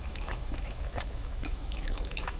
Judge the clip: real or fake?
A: fake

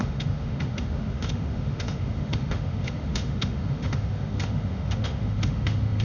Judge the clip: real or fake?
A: fake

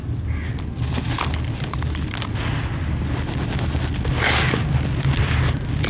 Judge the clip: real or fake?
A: real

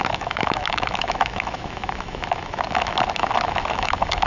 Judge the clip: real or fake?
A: fake